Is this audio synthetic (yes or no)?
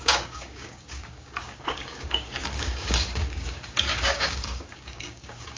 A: yes